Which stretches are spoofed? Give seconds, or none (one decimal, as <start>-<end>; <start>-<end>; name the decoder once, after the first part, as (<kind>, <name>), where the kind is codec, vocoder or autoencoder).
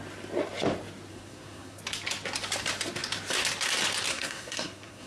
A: 1.1-1.8 (codec, SNAC); 4.1-5.1